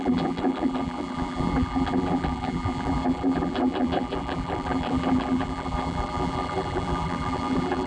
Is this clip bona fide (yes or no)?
no